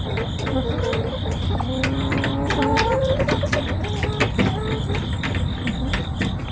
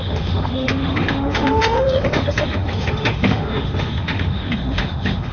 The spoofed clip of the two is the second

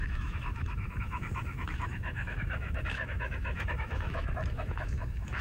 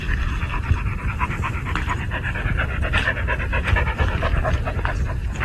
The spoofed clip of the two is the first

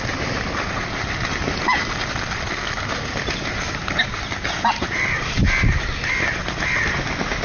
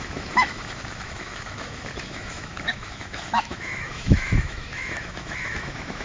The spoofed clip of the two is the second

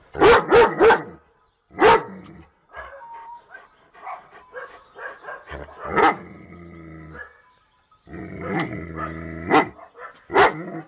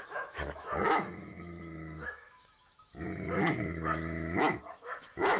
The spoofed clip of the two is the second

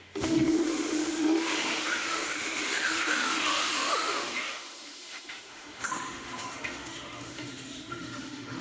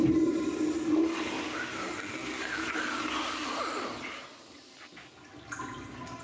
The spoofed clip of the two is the first